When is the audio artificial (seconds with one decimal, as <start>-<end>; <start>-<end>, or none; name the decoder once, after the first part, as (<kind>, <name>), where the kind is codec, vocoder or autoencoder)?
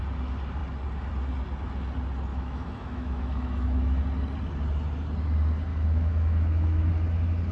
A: 2.3-4.0 (autoencoder, DAC-VAE); 5.7-6.9